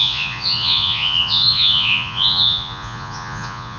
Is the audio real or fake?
fake